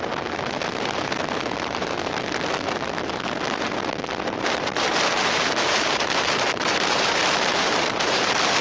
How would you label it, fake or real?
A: fake